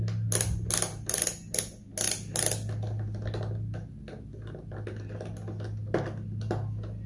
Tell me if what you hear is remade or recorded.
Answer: recorded